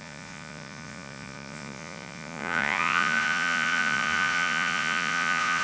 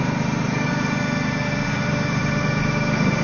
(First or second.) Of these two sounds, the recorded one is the second